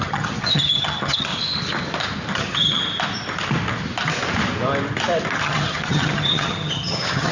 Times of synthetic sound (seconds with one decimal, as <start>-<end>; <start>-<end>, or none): 0.0-1.3; 2.3-2.8; 5.4-7.3